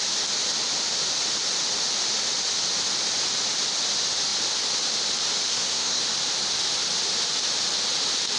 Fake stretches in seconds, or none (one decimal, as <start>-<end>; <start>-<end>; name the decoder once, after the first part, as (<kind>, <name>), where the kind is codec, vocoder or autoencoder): 5.5-6.0 (codec, SNAC)